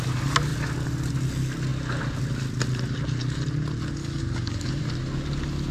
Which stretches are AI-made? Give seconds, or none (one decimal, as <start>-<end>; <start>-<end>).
4.0-4.8